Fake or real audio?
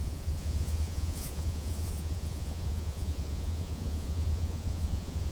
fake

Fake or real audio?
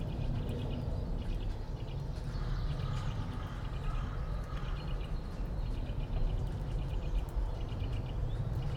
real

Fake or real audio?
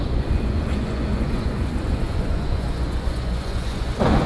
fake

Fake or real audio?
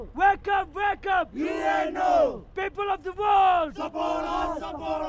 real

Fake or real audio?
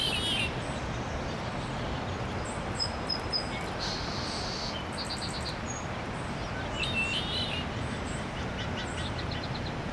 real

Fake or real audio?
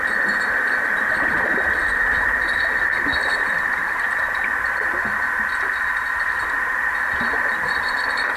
fake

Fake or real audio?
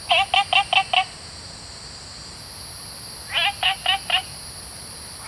real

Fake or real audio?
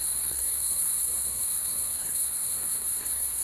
fake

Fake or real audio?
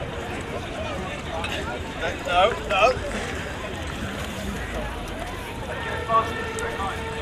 fake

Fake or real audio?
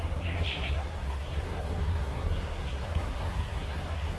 fake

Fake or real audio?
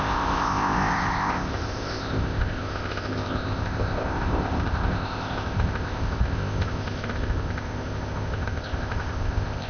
fake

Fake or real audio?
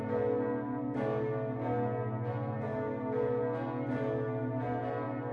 real